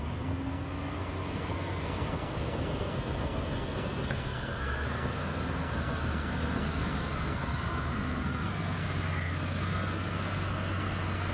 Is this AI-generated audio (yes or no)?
yes